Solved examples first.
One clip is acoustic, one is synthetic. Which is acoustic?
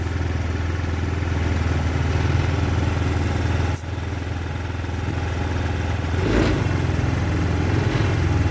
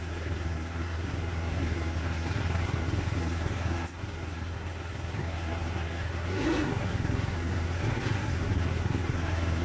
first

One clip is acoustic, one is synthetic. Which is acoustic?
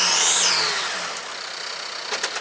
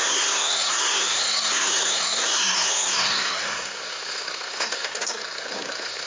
first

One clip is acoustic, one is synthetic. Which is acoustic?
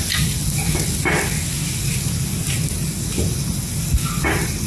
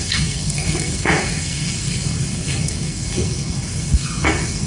first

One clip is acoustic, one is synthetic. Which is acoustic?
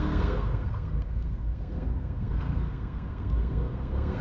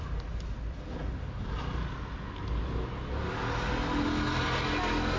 second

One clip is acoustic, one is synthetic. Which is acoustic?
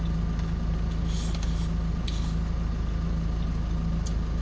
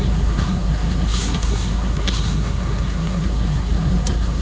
first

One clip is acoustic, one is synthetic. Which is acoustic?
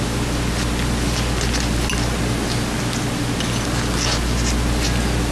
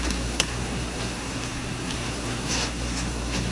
first